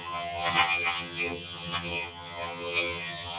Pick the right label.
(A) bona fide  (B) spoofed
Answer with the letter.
B